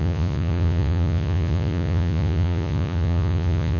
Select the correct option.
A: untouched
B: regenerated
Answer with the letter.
B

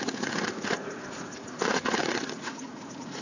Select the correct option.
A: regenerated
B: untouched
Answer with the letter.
A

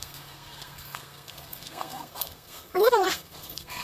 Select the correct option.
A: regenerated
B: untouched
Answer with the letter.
A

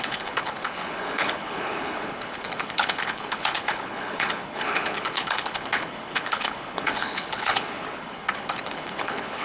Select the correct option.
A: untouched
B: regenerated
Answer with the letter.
B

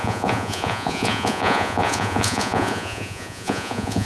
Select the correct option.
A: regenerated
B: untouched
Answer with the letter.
A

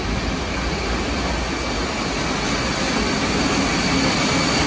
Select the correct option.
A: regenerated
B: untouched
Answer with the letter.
B